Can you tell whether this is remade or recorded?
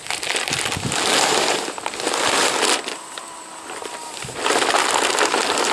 remade